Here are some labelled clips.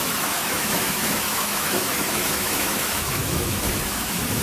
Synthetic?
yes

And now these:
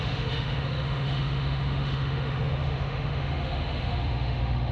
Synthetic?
yes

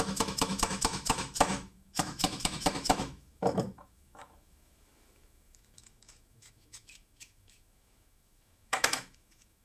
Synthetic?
yes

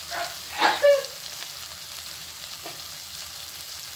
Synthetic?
no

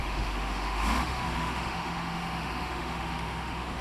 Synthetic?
yes